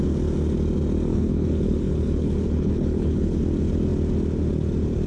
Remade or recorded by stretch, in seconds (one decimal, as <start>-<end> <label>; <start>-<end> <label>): 0.0-1.1 recorded; 1.1-3.4 remade; 3.4-5.1 recorded